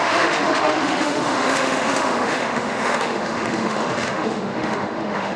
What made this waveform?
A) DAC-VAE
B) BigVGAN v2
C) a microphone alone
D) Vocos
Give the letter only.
A